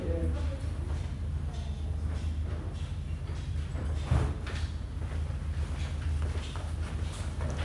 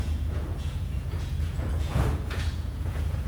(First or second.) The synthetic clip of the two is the second